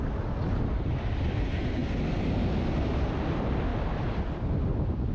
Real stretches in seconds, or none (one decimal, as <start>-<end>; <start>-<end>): 0.0-3.7; 4.2-5.1